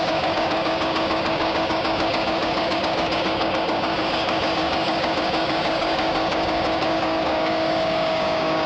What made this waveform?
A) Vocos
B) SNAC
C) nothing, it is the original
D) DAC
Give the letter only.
D